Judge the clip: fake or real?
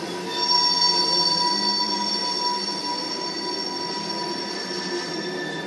real